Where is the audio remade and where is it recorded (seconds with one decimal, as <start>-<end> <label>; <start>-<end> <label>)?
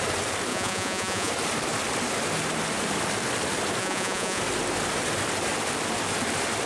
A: 0.0-0.5 recorded; 0.5-1.3 remade; 1.3-3.8 recorded; 3.8-4.4 remade; 4.4-6.7 recorded